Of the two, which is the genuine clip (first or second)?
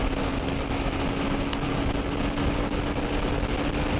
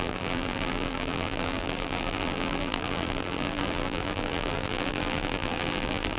first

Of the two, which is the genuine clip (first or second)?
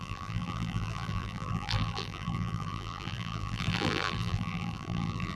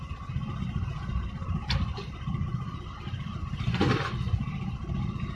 second